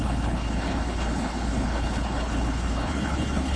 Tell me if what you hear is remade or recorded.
remade